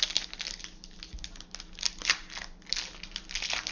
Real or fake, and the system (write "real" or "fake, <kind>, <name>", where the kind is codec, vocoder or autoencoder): real